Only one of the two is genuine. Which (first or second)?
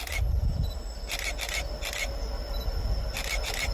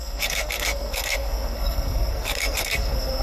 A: first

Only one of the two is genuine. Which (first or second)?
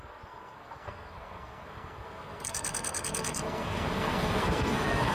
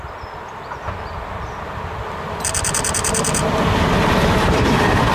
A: second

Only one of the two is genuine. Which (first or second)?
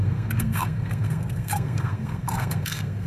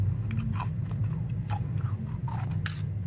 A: second